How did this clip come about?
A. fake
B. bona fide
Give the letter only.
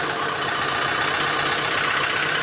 B